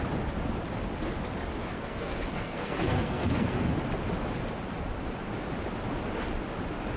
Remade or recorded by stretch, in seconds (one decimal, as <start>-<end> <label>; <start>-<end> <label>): 0.0-1.7 recorded; 1.7-3.7 remade; 3.7-7.0 recorded